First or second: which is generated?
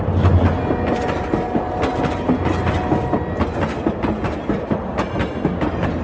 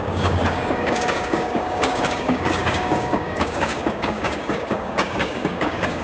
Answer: second